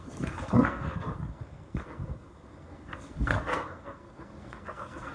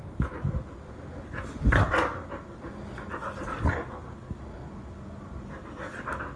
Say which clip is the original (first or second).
second